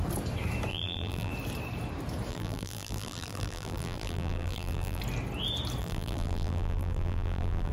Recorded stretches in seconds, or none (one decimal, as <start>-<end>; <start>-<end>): 0.0-0.7; 1.3-2.3; 5.0-5.8

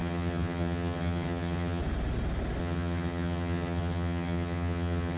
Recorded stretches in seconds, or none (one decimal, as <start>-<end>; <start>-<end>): 1.8-2.6